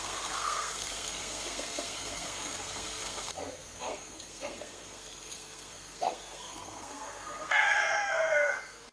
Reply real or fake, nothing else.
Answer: fake